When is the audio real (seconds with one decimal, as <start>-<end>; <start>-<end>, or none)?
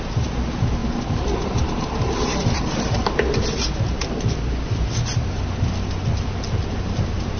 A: 0.0-0.8; 3.4-7.4